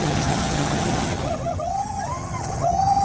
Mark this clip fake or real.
fake